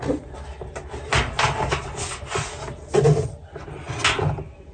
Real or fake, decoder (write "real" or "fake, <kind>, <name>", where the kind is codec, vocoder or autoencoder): real